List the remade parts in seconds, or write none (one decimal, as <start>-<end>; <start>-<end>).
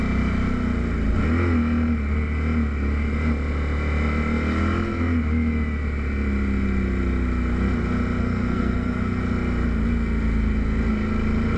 8.2-9.2